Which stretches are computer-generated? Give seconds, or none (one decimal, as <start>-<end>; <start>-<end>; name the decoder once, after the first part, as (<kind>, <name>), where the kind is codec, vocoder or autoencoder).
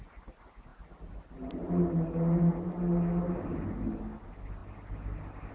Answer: none